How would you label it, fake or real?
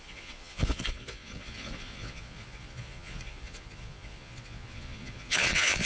fake